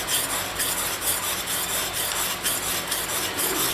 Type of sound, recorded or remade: recorded